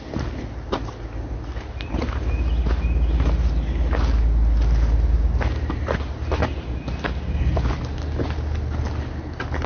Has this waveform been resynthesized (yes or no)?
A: no